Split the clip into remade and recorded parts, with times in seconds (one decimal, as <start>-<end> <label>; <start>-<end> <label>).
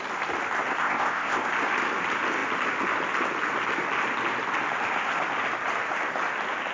0.0-0.8 recorded; 0.8-1.5 remade; 1.5-6.7 recorded